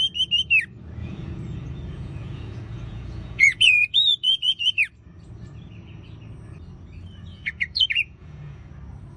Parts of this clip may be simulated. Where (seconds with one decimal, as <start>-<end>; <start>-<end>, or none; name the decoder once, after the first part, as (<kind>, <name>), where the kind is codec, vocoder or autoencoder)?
1.0-4.8 (vocoder, Vocos); 7.3-8.7